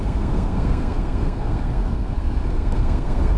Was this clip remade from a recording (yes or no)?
yes